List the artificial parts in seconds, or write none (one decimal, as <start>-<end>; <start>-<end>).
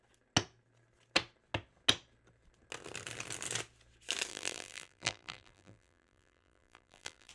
4.3-7.3